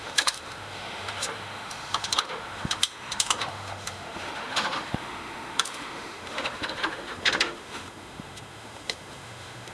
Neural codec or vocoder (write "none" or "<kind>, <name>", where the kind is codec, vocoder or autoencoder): autoencoder, DAC-VAE